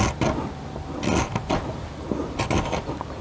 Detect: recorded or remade recorded